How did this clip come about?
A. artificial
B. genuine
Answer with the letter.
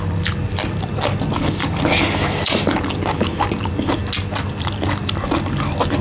B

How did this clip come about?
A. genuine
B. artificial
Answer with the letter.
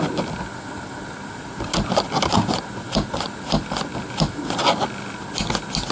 A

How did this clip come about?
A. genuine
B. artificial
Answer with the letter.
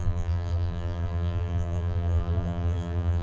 B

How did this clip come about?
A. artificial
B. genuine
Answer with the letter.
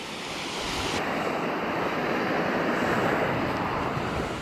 B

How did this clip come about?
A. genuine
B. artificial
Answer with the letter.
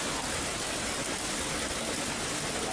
A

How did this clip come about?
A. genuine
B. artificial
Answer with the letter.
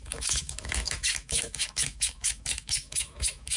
B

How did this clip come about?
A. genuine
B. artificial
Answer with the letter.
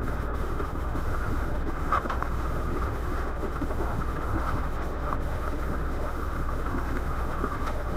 B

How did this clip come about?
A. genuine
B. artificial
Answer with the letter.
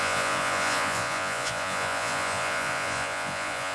B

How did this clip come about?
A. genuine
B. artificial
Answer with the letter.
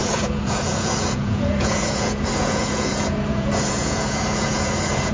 B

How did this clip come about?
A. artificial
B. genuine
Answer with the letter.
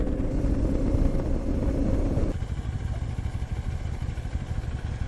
B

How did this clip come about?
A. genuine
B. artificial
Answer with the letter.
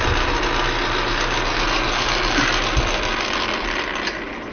A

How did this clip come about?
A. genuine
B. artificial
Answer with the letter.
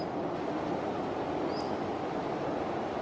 A